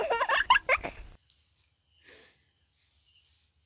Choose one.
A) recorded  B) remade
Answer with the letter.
A